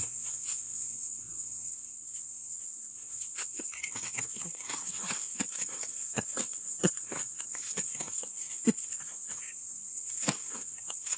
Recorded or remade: remade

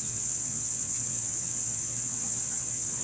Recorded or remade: remade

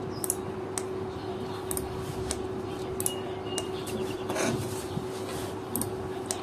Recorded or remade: recorded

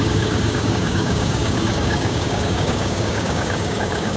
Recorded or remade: remade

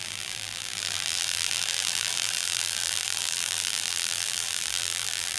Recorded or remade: remade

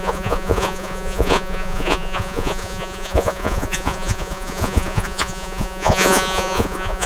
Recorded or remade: remade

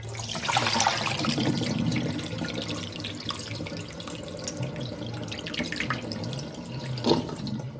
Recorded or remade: recorded